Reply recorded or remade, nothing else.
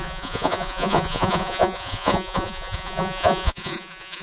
remade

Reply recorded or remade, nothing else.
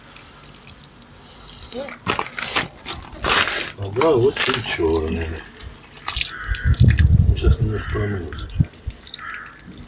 recorded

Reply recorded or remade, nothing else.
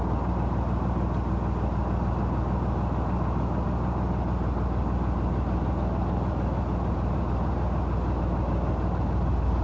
recorded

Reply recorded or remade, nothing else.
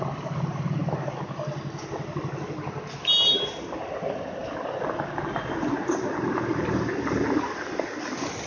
recorded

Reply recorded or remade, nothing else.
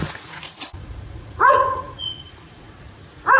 remade